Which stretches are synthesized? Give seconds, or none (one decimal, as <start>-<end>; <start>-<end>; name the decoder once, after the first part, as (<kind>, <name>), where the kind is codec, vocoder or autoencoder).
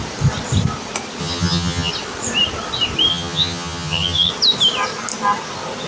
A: 1.2-1.9 (vocoder, HiFi-GAN); 3.1-4.3